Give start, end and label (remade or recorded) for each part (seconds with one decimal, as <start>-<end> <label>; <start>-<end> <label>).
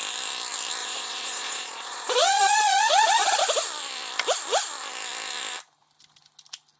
0.0-0.8 recorded; 0.8-3.4 remade; 3.4-6.8 recorded